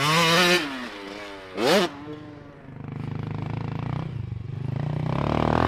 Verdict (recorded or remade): recorded